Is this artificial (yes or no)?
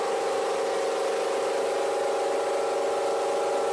no